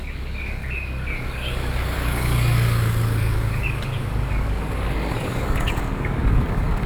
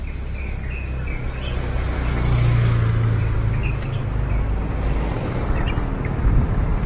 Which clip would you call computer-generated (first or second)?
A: first